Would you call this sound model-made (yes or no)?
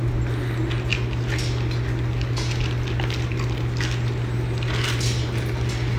no